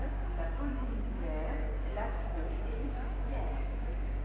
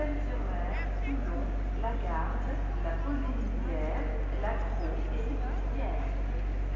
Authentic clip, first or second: second